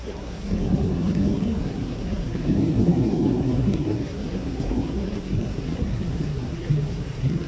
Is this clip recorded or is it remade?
remade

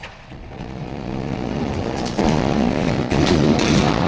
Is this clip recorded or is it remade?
remade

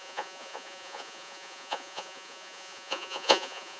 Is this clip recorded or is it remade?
remade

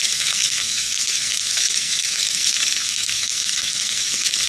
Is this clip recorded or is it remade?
remade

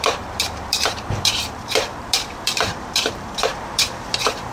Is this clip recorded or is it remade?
remade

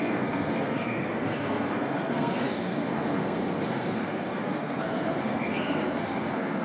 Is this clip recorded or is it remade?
remade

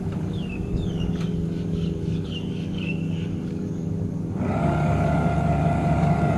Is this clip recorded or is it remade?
remade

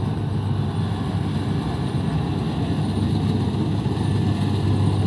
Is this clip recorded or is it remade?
recorded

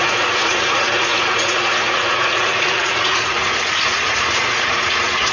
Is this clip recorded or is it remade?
remade